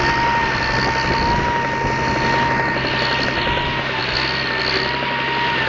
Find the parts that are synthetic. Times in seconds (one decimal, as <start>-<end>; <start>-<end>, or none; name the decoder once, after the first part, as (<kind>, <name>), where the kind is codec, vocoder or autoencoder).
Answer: none